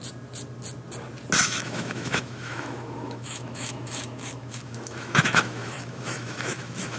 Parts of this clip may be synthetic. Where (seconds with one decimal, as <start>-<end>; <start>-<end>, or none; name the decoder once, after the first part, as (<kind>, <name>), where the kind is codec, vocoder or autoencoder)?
1.4-7.0 (autoencoder, DAC-VAE)

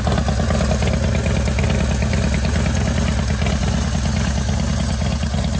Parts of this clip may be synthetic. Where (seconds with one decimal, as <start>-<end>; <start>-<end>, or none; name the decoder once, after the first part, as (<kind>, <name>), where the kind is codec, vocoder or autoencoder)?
none

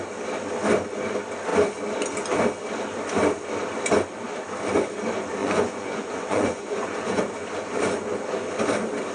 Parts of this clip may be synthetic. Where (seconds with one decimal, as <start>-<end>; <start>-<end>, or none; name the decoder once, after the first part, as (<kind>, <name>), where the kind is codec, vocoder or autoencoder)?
5.4-7.2 (vocoder, Vocos)

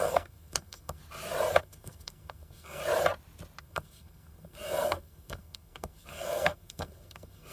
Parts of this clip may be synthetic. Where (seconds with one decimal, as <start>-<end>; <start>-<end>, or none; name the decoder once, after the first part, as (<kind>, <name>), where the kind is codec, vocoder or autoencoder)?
0.0-1.0 (codec, SNAC); 1.6-2.8; 3.6-7.5

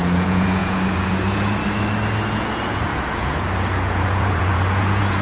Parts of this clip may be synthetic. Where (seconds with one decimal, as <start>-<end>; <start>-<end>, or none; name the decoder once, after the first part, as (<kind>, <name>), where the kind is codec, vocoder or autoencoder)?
0.0-1.6 (vocoder, Vocos); 2.3-5.2

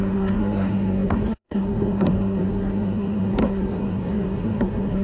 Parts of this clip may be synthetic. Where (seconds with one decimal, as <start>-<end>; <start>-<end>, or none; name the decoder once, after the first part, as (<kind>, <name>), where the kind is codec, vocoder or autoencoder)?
0.0-5.0 (codec, SNAC)

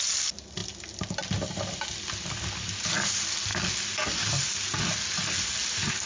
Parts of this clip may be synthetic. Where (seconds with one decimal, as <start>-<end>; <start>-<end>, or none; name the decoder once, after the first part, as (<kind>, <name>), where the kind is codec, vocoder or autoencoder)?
none